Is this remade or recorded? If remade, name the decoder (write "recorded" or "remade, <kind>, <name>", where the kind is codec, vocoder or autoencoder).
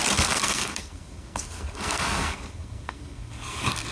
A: remade, codec, SNAC